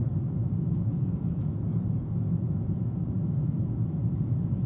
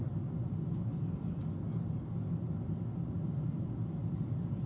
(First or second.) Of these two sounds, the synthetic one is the first